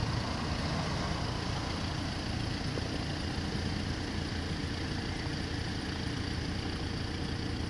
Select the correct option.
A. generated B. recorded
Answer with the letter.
B